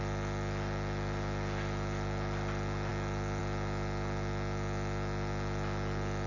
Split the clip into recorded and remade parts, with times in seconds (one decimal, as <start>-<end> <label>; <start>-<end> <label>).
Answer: 0.0-6.3 recorded